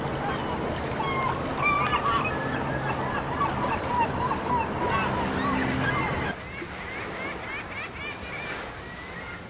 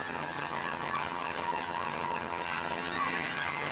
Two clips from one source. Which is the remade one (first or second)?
second